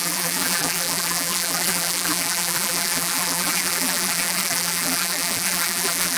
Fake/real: fake